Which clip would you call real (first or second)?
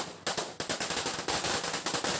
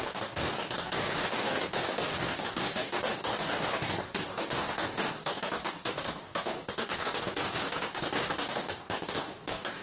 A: first